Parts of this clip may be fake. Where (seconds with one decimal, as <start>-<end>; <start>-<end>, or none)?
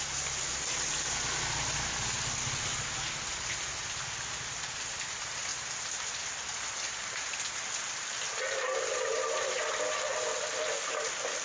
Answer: none